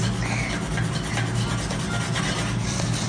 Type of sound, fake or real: real